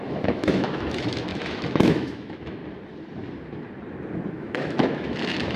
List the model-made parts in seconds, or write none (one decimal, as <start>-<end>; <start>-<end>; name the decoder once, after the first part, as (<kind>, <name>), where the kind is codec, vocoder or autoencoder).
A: 0.0-2.6 (autoencoder, DAC-VAE); 4.3-5.6